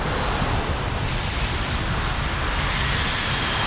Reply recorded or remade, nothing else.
recorded